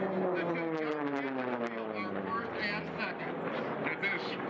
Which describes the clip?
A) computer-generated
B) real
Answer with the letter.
B